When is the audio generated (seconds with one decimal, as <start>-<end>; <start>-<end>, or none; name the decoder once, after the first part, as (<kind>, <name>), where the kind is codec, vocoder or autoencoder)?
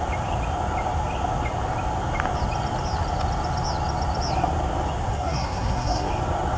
5.1-6.1 (codec, SNAC)